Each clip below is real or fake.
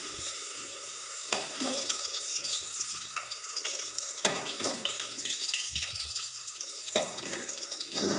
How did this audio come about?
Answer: fake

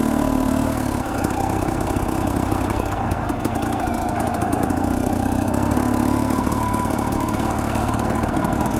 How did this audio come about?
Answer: fake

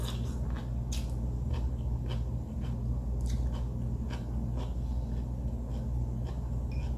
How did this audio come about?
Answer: real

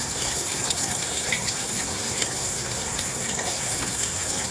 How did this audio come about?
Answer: fake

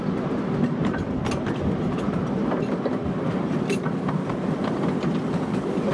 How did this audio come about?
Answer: real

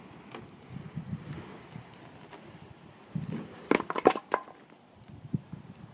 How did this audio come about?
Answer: real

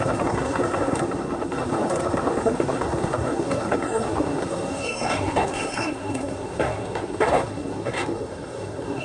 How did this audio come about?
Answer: fake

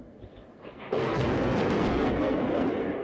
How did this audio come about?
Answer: fake